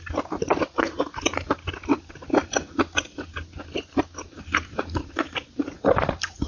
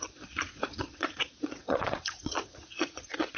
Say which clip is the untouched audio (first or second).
first